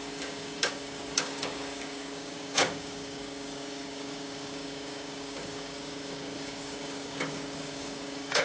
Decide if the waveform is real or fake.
fake